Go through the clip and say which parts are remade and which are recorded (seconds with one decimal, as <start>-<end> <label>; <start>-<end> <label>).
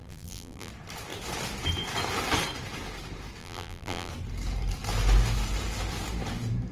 0.0-0.7 remade; 0.7-3.4 recorded; 3.4-4.1 remade; 4.1-6.7 recorded